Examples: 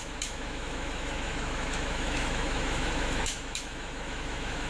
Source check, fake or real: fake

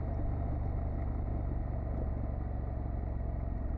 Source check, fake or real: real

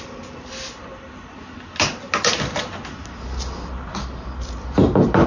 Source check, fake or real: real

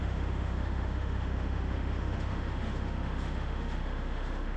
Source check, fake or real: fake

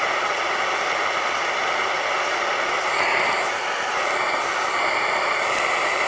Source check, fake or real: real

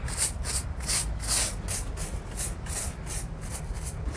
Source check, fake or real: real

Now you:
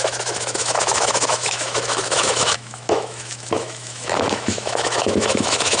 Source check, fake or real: fake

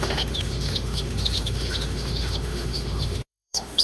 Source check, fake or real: fake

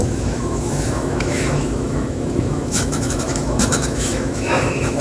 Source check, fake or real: fake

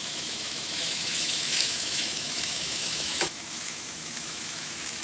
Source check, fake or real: fake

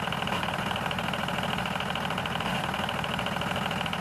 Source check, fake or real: real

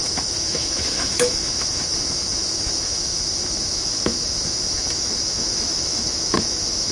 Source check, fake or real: fake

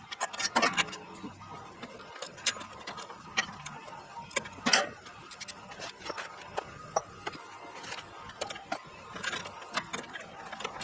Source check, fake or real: real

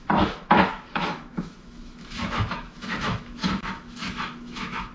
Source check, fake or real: fake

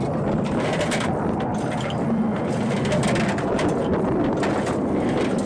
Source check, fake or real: real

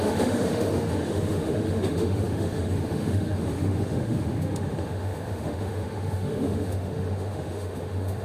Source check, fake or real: fake